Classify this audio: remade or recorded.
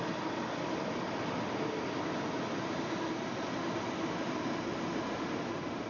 recorded